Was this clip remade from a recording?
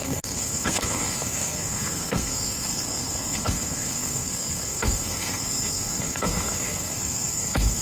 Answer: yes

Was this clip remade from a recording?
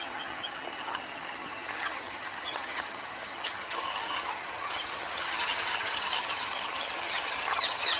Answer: yes